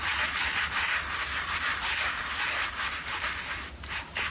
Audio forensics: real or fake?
real